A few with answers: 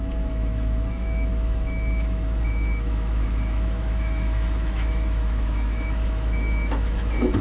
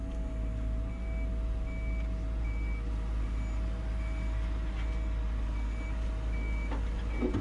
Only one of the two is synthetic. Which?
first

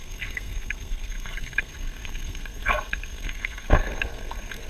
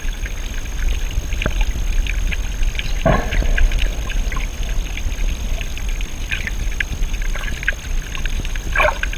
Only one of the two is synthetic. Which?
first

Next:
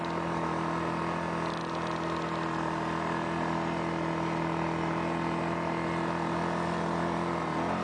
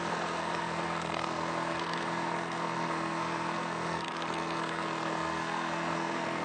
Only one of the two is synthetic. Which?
second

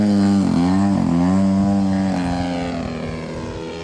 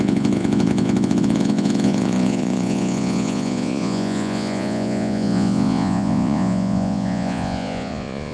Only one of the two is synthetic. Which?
second